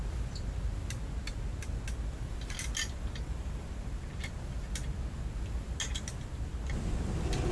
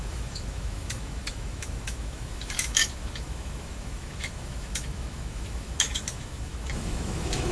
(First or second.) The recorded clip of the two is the first